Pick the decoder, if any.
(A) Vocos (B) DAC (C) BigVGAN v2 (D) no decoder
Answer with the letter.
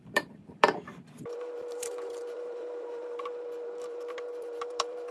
C